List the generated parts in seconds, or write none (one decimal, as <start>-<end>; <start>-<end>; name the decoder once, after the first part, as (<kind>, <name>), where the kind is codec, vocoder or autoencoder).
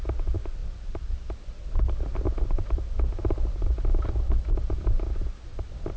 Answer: none